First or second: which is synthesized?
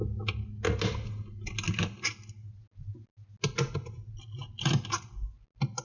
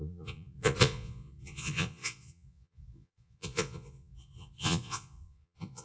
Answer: second